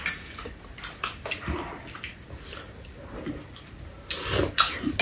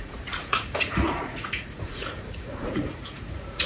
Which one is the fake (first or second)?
second